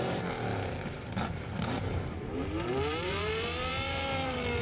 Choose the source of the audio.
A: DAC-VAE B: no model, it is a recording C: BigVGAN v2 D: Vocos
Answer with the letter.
C